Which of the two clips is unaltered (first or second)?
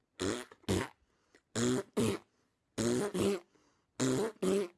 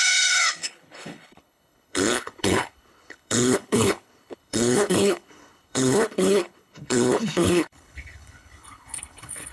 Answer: first